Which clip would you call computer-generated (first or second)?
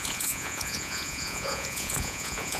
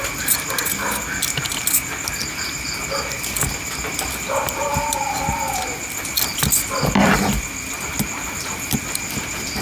first